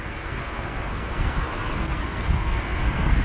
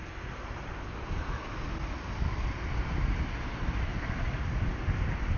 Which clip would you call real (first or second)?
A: second